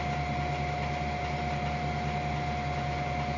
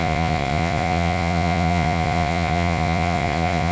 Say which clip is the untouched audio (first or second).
first